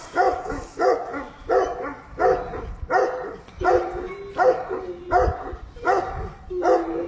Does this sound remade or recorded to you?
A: recorded